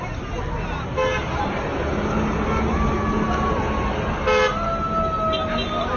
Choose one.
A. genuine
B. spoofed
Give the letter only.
A